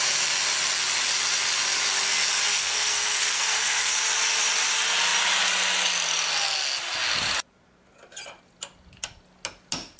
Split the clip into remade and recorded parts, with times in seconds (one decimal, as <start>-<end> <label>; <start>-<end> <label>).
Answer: 0.0-2.5 recorded; 2.5-3.9 remade; 3.9-10.0 recorded